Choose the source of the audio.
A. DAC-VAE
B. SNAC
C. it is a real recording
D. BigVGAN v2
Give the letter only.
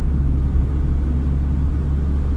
C